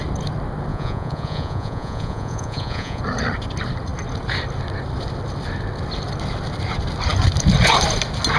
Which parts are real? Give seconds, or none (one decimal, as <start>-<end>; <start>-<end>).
0.0-0.7; 3.0-8.4